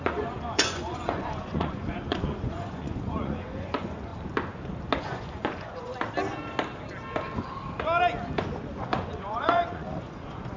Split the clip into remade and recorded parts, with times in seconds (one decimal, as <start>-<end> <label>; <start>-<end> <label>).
0.0-4.1 remade; 4.1-5.0 recorded; 5.0-5.9 remade; 5.9-8.8 recorded; 8.8-10.6 remade